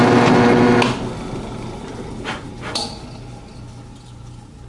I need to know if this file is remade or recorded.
recorded